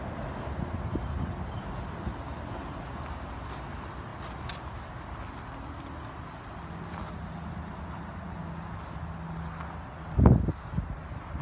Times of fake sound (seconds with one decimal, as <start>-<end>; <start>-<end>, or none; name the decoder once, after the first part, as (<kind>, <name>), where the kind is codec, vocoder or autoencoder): none